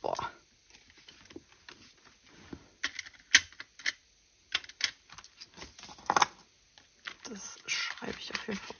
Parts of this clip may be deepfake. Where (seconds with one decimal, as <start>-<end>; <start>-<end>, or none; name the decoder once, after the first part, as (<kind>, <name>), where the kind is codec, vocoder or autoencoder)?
none